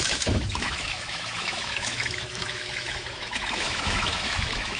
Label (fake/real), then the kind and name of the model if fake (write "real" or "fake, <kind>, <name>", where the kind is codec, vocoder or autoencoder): fake, autoencoder, DAC-VAE